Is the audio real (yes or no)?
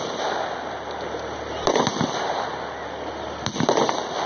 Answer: yes